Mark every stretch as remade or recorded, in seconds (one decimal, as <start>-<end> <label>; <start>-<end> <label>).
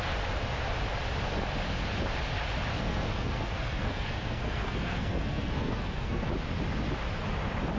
0.0-2.8 recorded; 2.8-6.3 remade; 6.3-7.8 recorded